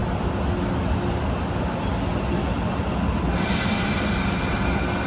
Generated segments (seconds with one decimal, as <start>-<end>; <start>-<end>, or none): none